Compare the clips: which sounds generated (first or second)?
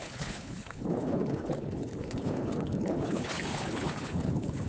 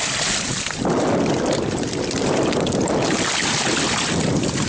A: first